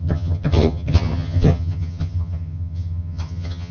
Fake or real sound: fake